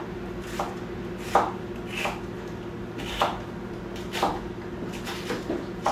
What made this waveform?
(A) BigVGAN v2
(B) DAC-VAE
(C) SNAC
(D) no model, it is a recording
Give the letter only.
D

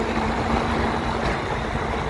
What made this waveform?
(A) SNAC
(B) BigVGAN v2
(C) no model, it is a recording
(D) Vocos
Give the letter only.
C